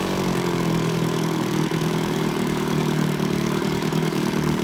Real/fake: fake